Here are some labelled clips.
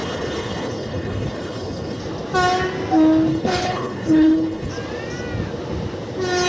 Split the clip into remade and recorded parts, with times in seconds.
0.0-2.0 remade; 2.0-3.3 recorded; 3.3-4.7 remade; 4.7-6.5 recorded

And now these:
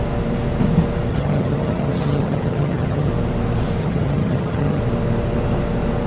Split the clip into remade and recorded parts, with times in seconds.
0.0-1.1 recorded; 1.1-3.1 remade; 3.1-3.8 recorded; 3.8-4.8 remade; 4.8-6.1 recorded

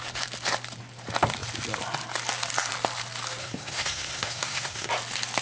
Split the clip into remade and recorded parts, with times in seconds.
0.0-3.4 recorded; 3.4-4.9 remade; 4.9-5.4 recorded

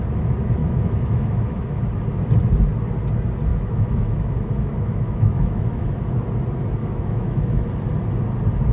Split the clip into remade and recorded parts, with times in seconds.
0.0-0.6 recorded; 0.6-1.8 remade; 1.8-3.5 recorded; 3.5-6.0 remade; 6.0-6.8 recorded; 6.8-7.7 remade; 7.7-8.7 recorded

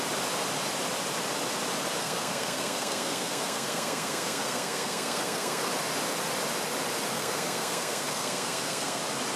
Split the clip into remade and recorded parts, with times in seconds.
0.0-2.0 recorded; 2.0-5.7 remade; 5.7-7.1 recorded; 7.1-9.0 remade; 9.0-9.4 recorded

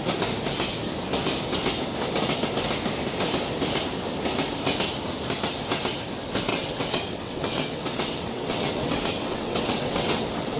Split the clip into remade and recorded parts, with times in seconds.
0.0-6.5 recorded; 6.5-10.6 remade

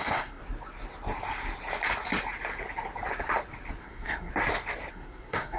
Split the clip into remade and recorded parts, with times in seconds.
0.0-0.4 remade; 0.4-3.8 recorded; 3.8-4.3 remade; 4.3-4.9 recorded; 4.9-5.6 remade